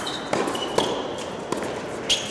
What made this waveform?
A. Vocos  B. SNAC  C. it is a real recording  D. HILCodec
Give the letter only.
C